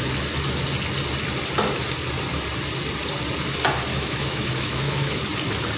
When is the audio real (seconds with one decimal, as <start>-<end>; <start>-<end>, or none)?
0.0-3.9; 5.2-5.8